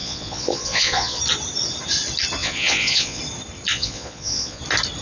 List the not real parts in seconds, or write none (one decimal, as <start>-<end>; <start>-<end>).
0.0-1.2; 2.4-3.2; 3.7-4.6